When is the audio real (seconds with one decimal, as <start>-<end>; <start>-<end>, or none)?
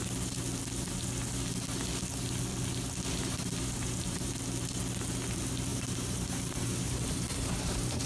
0.0-3.1; 4.3-5.7